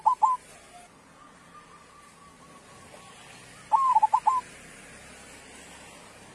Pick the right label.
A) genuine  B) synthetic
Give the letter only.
A